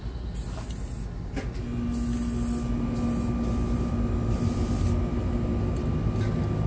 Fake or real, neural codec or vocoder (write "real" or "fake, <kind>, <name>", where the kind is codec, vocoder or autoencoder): real